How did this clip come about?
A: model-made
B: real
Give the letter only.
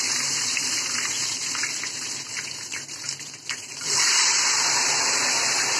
A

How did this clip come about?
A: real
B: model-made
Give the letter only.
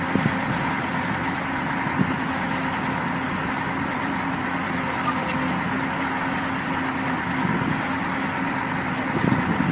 A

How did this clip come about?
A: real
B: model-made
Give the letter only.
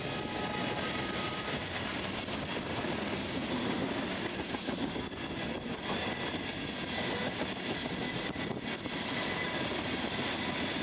A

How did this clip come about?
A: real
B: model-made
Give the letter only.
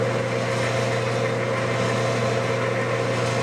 A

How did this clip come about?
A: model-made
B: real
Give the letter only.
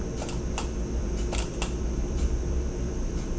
A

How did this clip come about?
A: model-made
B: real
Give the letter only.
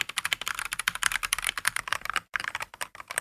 A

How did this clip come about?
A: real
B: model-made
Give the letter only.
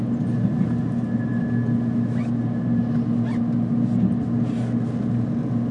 A